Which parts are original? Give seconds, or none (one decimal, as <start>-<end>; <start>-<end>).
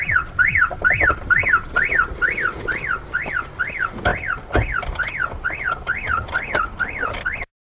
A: 0.0-7.6